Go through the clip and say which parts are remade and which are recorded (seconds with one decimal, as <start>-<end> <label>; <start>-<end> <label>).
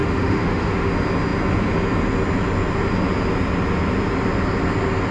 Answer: 0.0-0.9 remade; 0.9-5.1 recorded